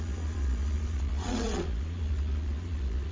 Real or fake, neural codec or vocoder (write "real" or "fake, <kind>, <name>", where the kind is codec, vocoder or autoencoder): fake, vocoder, Vocos